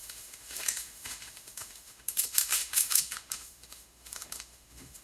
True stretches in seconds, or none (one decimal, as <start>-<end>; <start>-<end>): none